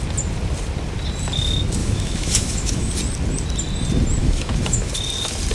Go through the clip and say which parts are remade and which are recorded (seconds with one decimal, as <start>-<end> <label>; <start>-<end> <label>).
0.0-1.8 recorded; 1.8-2.9 remade; 2.9-4.2 recorded; 4.2-4.9 remade; 4.9-5.5 recorded